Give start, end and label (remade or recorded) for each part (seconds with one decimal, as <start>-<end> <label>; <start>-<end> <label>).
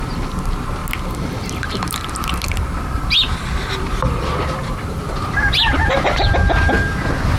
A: 0.0-0.8 remade; 0.8-3.7 recorded; 3.7-7.4 remade